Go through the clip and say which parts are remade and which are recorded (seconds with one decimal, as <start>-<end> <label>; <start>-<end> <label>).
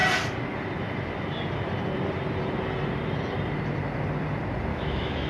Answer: 0.0-4.7 recorded; 4.7-5.3 remade